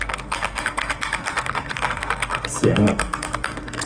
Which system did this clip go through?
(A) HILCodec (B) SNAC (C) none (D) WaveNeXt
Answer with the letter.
B